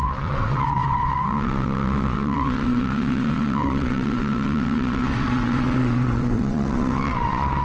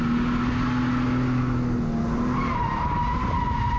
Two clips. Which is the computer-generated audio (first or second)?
first